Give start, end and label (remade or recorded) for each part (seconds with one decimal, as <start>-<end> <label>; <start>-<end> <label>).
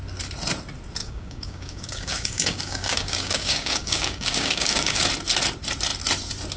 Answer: 0.0-1.0 recorded; 1.0-5.0 remade; 5.0-6.6 recorded